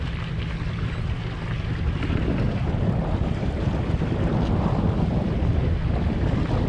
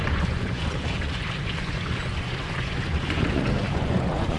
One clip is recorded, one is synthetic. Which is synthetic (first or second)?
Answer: second